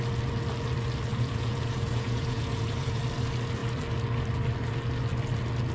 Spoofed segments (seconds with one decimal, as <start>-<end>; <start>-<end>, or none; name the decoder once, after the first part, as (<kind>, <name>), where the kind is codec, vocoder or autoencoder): 1.1-3.0 (vocoder, Vocos)